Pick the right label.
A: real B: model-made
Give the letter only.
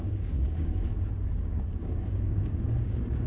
B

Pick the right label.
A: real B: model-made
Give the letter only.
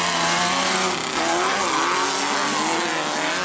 A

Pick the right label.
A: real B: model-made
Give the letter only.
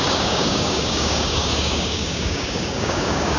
B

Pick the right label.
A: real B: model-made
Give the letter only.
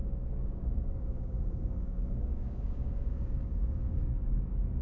B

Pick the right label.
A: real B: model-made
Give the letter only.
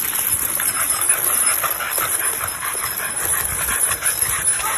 A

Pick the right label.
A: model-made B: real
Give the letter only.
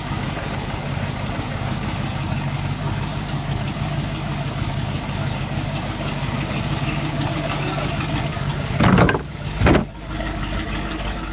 A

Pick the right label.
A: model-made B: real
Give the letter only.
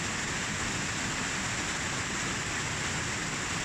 B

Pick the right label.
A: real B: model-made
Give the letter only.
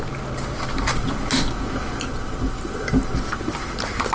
A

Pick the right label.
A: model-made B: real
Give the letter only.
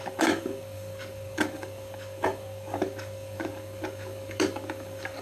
A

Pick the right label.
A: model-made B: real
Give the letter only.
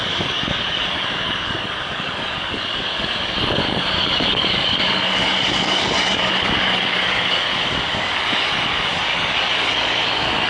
A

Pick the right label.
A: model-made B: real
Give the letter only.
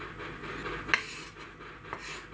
B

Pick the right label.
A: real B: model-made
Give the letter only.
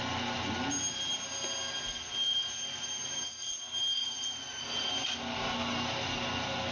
A